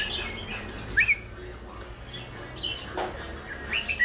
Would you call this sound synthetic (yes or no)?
no